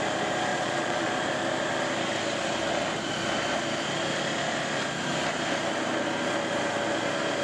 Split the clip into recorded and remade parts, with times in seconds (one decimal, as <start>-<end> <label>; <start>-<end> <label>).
0.0-0.5 recorded; 0.5-1.1 remade; 1.1-7.4 recorded